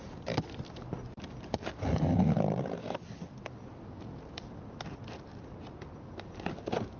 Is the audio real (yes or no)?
yes